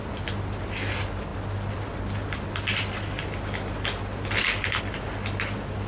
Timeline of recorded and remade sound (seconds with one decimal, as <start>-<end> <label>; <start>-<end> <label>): 0.0-5.9 recorded